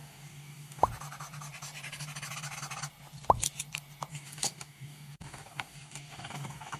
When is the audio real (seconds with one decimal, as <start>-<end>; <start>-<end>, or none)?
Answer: 0.8-4.1